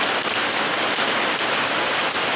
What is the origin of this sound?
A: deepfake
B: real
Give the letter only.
B